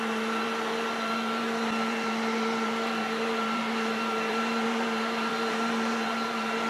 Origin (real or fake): fake